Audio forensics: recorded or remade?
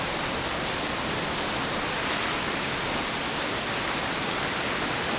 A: recorded